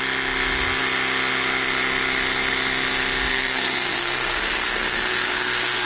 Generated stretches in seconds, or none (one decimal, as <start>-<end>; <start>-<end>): 3.3-5.9